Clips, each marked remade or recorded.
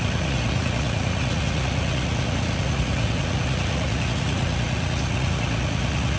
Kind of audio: remade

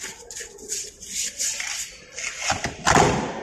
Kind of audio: recorded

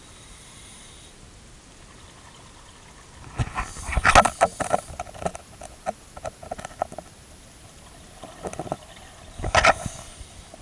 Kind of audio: recorded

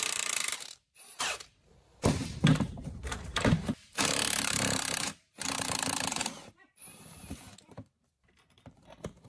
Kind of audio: remade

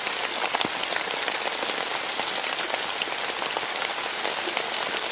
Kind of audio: recorded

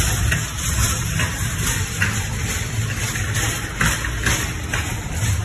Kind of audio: recorded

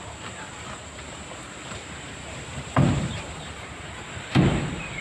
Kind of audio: remade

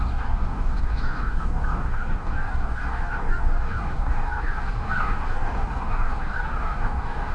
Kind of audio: remade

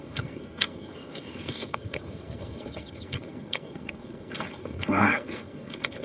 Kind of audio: remade